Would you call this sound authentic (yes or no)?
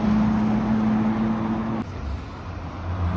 yes